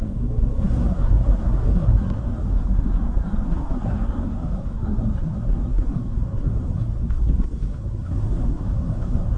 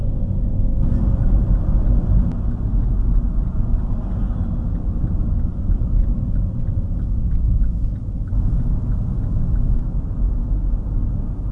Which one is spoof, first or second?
first